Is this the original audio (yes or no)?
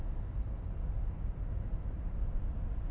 yes